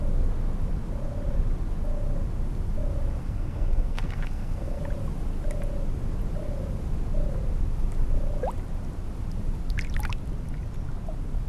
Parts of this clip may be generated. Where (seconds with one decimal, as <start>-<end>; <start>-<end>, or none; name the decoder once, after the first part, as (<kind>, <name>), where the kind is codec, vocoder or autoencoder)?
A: 3.2-4.8 (codec, SNAC)